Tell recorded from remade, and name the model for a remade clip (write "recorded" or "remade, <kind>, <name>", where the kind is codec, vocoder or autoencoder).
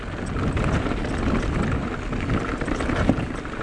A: recorded